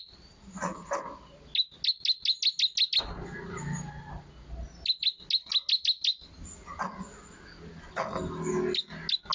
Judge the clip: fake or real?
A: real